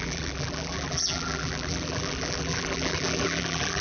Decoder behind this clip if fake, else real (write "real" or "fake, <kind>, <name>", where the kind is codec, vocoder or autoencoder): fake, vocoder, BigVGAN v2